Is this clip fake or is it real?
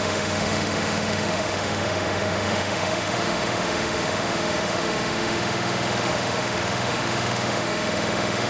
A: fake